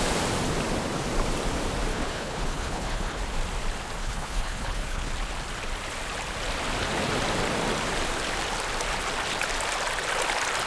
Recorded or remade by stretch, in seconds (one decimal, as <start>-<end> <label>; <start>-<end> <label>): 0.0-1.9 recorded; 1.9-3.2 remade; 3.2-4.0 recorded; 4.0-5.1 remade; 5.1-10.7 recorded